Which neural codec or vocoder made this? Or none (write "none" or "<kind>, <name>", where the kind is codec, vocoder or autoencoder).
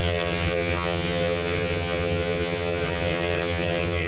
vocoder, HiFi-GAN